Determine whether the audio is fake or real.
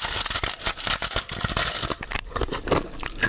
real